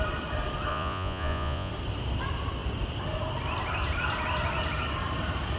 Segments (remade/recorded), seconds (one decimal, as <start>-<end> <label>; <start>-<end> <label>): 0.0-0.7 recorded; 0.7-1.7 remade; 1.7-5.6 recorded